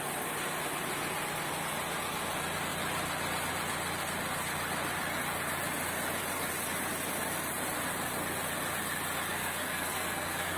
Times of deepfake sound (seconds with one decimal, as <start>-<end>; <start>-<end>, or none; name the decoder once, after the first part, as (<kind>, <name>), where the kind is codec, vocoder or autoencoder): 9.3-10.6 (codec, SNAC)